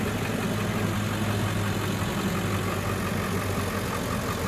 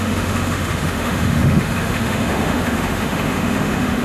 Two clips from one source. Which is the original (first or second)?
first